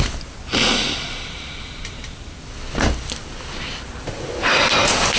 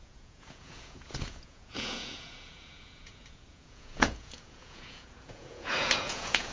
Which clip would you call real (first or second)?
first